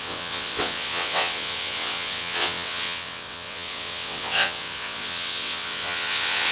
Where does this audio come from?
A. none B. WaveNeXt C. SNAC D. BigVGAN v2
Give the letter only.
B